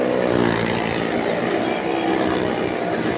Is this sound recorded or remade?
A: recorded